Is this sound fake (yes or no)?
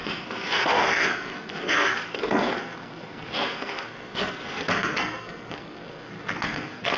yes